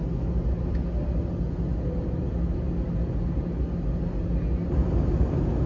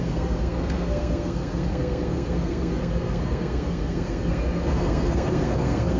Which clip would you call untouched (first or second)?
first